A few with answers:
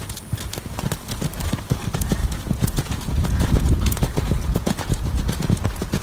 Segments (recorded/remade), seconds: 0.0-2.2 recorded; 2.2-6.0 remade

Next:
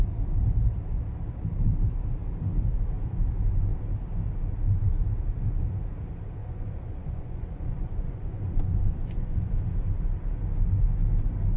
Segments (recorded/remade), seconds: 0.0-6.4 recorded; 6.4-9.5 remade; 9.5-11.6 recorded

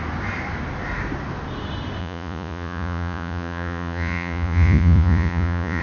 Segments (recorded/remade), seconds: 0.0-2.0 recorded; 2.0-5.8 remade

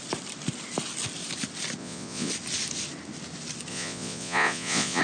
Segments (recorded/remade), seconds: 0.0-1.8 recorded; 1.8-2.3 remade; 2.3-3.7 recorded; 3.7-5.0 remade